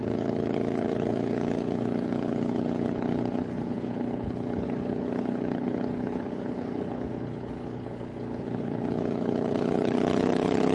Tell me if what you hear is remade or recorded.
remade